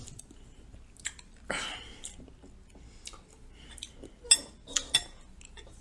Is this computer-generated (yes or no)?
no